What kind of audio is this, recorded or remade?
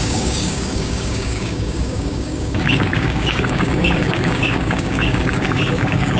remade